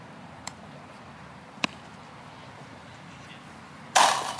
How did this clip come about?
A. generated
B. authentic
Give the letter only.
A